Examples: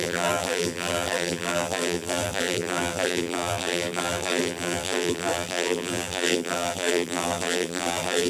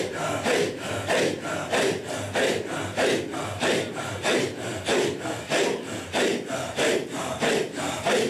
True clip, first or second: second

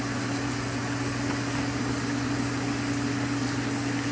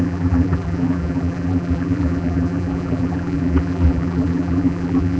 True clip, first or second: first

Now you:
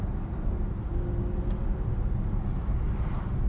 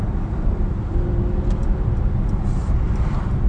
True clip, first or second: first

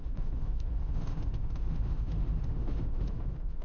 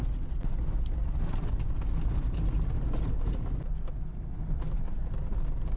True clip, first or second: second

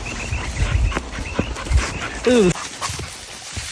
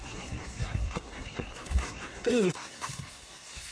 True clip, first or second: first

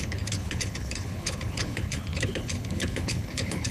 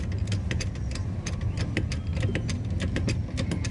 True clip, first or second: second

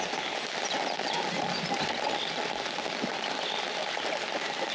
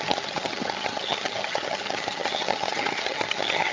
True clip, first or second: first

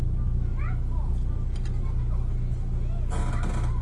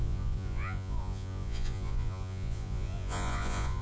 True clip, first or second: first